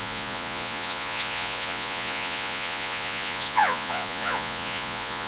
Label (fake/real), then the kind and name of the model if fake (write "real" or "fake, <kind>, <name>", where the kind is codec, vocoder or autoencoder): fake, vocoder, Vocos